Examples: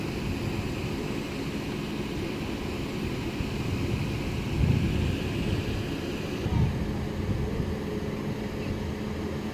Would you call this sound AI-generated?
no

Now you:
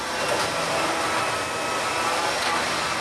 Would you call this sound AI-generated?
no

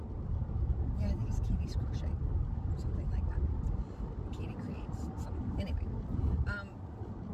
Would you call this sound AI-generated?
no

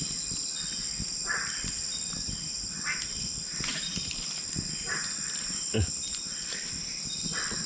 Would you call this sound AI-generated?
no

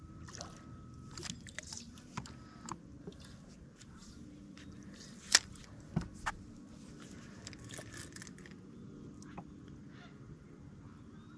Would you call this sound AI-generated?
no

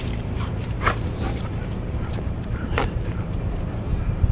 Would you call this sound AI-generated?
yes